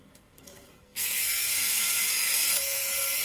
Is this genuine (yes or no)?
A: no